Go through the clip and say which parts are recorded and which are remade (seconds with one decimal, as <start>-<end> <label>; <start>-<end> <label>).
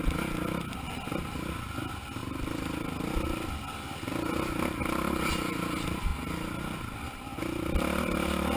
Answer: 0.0-8.6 recorded